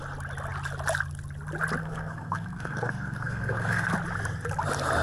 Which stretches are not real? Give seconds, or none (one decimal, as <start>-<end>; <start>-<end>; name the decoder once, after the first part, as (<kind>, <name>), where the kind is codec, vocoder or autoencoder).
1.8-3.9 (codec, SNAC)